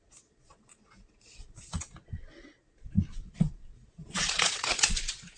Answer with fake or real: fake